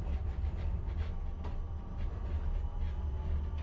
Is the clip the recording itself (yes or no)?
yes